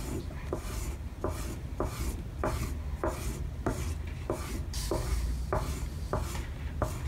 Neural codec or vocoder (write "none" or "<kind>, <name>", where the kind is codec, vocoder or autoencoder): none